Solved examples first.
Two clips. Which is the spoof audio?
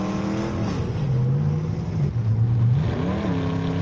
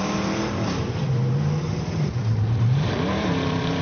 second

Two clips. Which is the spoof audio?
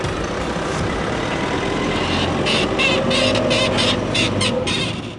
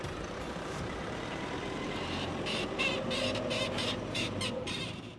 second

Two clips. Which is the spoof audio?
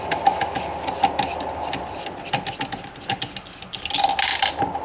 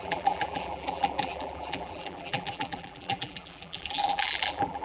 second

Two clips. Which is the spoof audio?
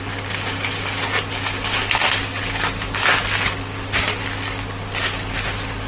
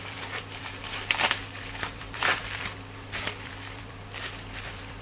second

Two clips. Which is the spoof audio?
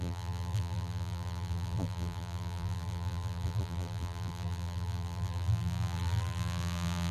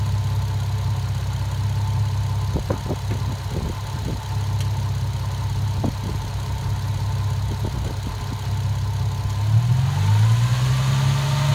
first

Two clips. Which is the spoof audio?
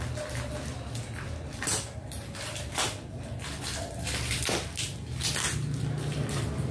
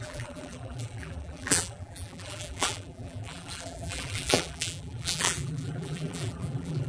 second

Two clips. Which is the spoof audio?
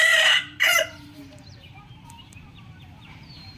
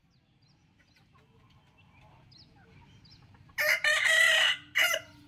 first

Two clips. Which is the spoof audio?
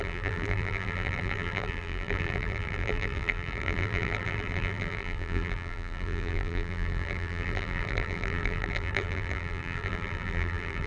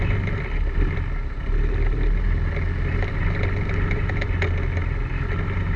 first